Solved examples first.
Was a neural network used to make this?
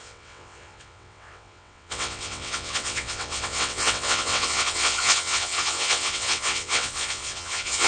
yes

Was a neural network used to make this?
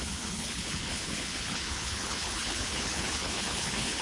yes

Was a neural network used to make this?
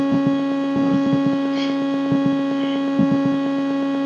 no